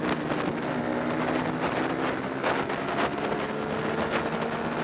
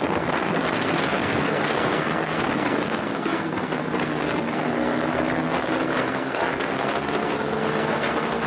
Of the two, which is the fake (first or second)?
second